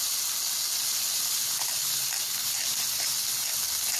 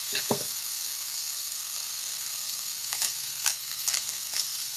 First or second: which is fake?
second